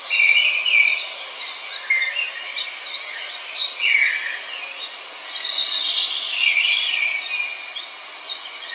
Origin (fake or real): real